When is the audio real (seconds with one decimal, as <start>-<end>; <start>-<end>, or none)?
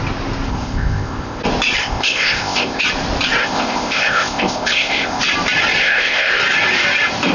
0.0-0.5; 1.4-1.8; 2.8-3.4; 5.2-5.8; 6.4-7.3